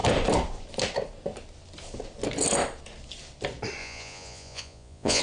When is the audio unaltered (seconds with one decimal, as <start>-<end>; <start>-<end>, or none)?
0.0-3.8